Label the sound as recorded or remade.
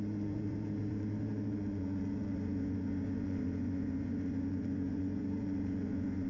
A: remade